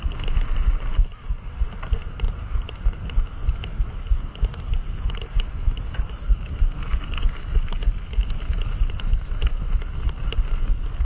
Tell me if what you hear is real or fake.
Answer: real